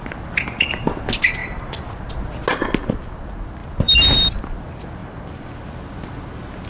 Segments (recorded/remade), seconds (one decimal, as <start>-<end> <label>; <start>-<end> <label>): 0.0-1.4 recorded; 1.4-2.1 remade; 2.1-3.6 recorded; 3.6-4.4 remade; 4.4-5.0 recorded; 5.0-5.7 remade; 5.7-6.7 recorded